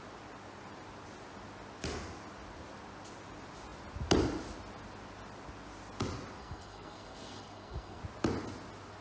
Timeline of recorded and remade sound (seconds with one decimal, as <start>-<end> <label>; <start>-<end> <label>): 0.0-6.4 recorded; 6.4-8.0 remade; 8.0-9.0 recorded